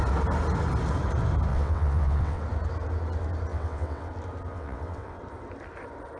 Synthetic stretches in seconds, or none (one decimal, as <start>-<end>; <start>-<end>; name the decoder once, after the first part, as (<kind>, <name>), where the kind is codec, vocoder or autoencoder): 1.5-2.4 (vocoder, WaveNeXt); 3.5-4.1; 4.5-5.2